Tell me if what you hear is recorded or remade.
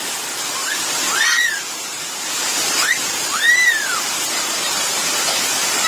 remade